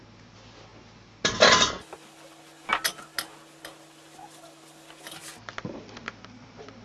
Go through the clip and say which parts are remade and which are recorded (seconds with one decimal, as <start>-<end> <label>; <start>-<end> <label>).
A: 0.0-6.8 recorded